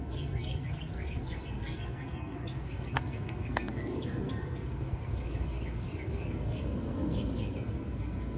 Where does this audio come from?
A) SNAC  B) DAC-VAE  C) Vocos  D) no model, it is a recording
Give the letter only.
A